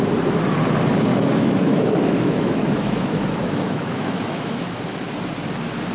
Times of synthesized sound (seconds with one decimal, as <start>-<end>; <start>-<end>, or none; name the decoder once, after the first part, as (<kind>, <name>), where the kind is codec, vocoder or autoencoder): 1.1-4.6 (autoencoder, DAC-VAE)